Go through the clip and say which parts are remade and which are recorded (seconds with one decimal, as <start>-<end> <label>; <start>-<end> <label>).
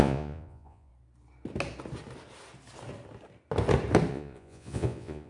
0.0-0.9 remade; 0.9-4.1 recorded; 4.1-5.3 remade